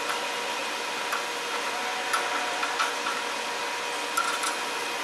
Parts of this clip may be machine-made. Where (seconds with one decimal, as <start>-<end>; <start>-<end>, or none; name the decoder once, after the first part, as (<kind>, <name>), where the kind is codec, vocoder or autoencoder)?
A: none